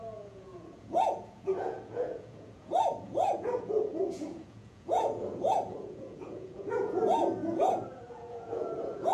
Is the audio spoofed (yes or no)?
yes